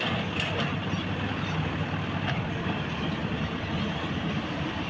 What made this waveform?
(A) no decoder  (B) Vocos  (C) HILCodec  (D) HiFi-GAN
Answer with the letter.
A